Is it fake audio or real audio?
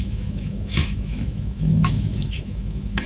fake